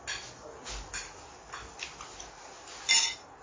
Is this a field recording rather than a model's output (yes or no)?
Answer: yes